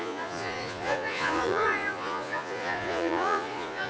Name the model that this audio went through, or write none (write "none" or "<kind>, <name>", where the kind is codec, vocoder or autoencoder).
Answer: vocoder, Vocos